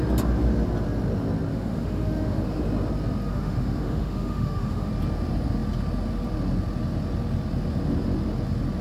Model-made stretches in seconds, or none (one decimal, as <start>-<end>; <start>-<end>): 1.5-2.6; 3.3-4.9